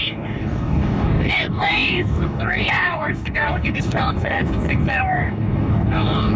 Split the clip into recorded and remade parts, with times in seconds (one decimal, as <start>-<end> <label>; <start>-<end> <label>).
0.0-6.4 remade